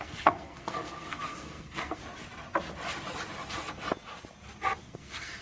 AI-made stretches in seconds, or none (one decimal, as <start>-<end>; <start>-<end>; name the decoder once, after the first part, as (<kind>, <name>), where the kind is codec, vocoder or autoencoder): 0.0-2.0 (codec, SNAC); 4.8-5.4